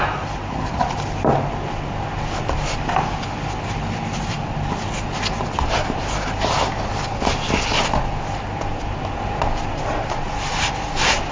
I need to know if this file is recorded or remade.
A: recorded